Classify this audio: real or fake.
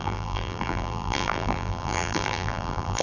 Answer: fake